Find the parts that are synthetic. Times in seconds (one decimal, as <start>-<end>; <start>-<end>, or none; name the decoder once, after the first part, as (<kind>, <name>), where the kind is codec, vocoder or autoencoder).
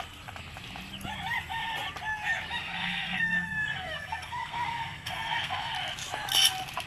2.6-5.7 (codec, SNAC)